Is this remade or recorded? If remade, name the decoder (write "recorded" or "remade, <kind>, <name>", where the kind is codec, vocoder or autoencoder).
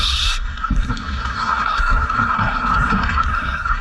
remade, codec, SNAC